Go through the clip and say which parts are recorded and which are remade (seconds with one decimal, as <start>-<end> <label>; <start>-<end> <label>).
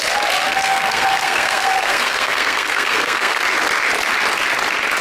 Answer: 0.0-0.4 recorded; 0.4-3.4 remade; 3.4-5.0 recorded